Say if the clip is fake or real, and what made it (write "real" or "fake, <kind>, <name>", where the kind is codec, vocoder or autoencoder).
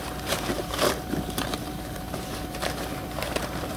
fake, vocoder, BigVGAN v2